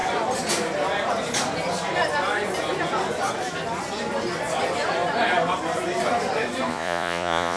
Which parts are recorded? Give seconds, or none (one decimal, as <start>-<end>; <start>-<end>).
0.0-6.7